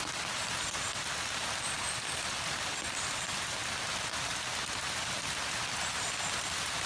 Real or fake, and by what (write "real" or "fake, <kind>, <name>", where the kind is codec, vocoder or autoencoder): real